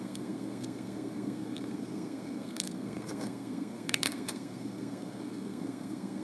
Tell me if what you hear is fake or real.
fake